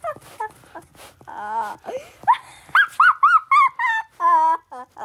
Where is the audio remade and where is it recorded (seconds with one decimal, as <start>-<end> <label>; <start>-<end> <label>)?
0.0-5.0 recorded